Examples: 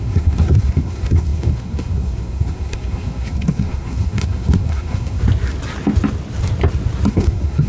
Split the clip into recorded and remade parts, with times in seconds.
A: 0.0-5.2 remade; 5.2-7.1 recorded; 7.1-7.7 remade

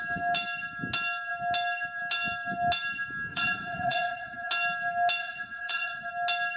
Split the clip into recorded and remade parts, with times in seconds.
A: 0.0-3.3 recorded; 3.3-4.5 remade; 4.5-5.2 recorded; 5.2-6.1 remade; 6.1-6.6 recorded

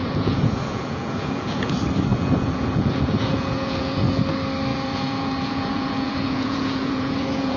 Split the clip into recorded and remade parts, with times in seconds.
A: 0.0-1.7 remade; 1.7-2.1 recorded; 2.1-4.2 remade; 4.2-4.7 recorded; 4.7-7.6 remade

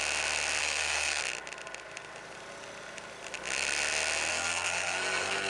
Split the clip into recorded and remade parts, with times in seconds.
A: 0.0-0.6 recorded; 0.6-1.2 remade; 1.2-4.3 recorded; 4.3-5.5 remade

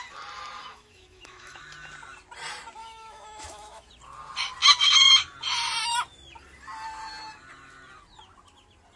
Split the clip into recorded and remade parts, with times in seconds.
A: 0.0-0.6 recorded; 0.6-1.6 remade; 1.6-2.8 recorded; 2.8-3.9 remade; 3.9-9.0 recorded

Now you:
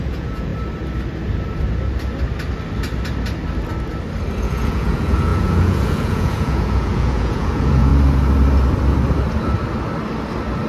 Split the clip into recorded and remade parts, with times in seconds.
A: 0.0-0.5 remade; 0.5-4.4 recorded; 4.4-7.9 remade; 7.9-10.7 recorded

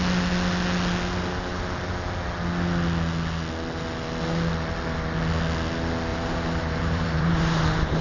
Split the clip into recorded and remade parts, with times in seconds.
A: 0.0-6.1 recorded; 6.1-8.0 remade

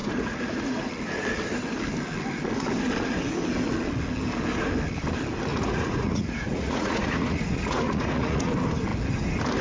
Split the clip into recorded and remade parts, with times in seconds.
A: 0.0-0.9 remade; 0.9-5.5 recorded; 5.5-8.5 remade; 8.5-9.6 recorded